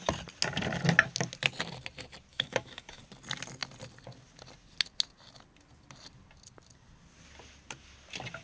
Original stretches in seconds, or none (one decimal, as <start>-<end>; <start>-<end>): 0.0-2.3; 3.0-8.4